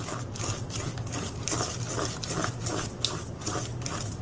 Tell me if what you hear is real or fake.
real